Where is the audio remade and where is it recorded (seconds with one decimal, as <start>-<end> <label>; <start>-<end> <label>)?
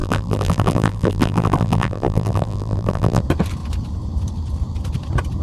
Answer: 0.0-3.2 remade; 3.2-5.4 recorded